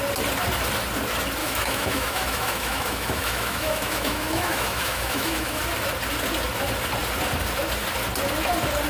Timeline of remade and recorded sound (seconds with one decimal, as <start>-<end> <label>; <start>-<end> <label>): 0.0-1.4 recorded; 1.4-5.6 remade; 5.6-8.9 recorded